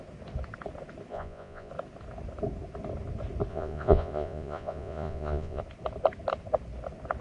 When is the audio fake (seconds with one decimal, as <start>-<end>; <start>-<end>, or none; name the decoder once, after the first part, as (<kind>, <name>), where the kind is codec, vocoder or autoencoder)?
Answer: 1.1-1.7 (vocoder, Vocos); 3.5-5.6